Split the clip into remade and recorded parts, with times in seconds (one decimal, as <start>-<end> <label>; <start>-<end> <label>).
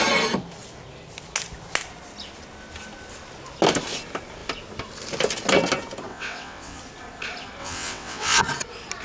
0.0-6.1 recorded; 6.1-6.8 remade; 6.8-7.6 recorded; 7.6-8.4 remade; 8.4-9.0 recorded